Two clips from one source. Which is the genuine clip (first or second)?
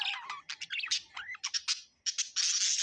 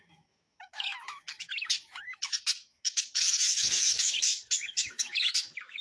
first